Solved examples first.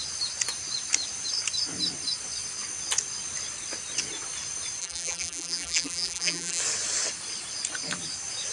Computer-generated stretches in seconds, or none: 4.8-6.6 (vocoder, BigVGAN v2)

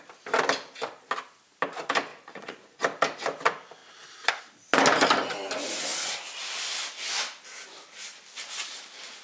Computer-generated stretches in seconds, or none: 2.1-2.8 (vocoder, Vocos)

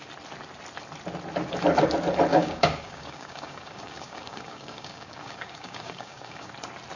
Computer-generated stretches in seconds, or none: 2.3-6.5 (codec, DAC)

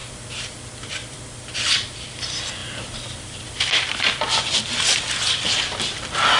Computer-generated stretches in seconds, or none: 0.0-6.4 (vocoder, BigVGAN v2)